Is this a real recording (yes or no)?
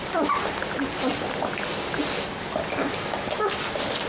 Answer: yes